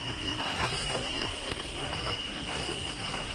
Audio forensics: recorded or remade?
remade